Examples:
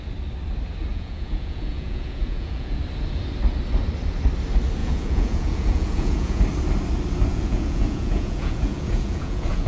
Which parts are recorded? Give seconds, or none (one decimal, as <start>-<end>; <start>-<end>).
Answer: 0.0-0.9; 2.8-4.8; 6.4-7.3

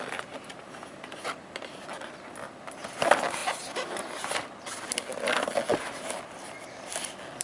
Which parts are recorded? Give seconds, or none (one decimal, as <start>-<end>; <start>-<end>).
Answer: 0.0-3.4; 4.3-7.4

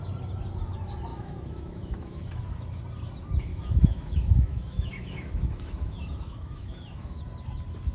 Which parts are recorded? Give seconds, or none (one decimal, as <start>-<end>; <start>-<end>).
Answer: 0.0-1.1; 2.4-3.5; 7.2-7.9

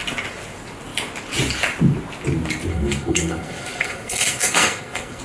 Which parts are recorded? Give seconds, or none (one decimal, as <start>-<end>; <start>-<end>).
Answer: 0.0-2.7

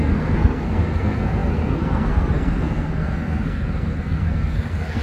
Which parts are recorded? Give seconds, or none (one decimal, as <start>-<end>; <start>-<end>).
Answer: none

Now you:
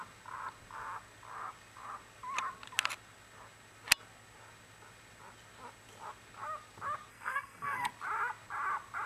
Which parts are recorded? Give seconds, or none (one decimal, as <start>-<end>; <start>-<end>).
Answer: 0.0-7.1; 7.9-9.1